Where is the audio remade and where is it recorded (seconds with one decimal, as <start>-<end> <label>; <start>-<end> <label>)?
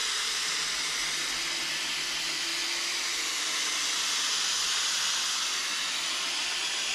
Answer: 0.0-6.9 recorded